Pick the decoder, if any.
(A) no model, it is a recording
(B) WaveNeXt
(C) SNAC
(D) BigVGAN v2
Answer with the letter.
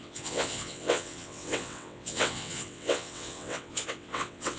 B